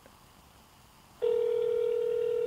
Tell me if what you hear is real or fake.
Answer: real